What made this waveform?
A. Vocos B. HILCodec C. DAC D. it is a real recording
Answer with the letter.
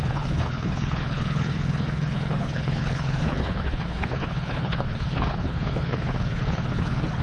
B